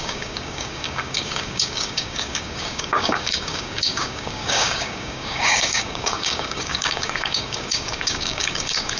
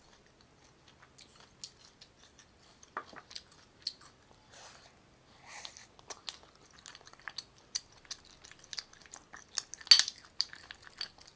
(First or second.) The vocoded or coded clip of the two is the first